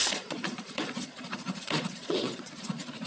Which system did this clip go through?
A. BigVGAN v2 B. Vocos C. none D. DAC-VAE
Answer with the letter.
B